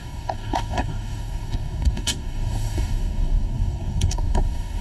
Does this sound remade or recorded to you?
remade